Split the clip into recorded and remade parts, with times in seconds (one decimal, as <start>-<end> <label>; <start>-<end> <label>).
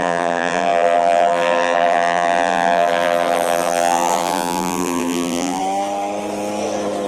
0.0-5.6 remade; 5.6-7.1 recorded